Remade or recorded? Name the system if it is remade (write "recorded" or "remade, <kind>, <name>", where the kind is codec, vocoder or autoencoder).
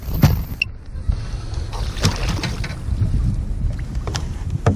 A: recorded